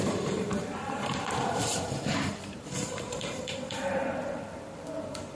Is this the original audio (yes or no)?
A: no